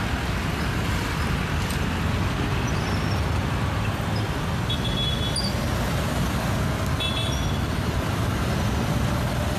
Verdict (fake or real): real